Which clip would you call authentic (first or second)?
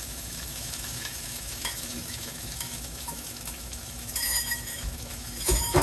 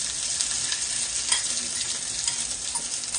second